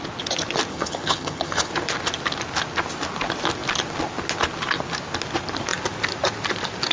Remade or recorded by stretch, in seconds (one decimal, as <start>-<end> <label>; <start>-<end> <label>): 0.0-0.7 recorded; 0.7-1.7 remade; 1.7-6.9 recorded